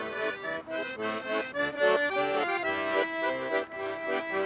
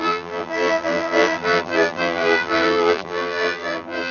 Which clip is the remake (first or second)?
second